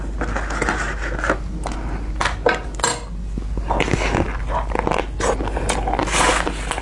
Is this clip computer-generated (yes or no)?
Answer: no